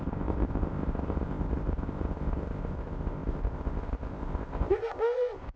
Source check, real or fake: fake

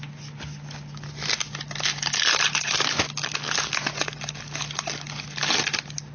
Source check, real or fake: real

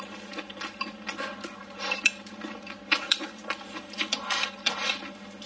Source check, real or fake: real